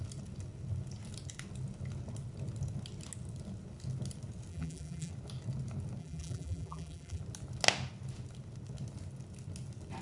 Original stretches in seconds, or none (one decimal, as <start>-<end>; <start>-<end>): 0.0-4.5; 5.1-6.0; 7.2-10.0